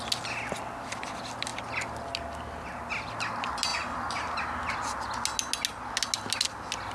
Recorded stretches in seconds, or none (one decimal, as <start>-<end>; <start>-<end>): 0.0-6.9